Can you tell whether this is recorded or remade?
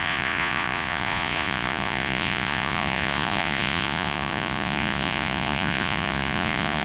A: remade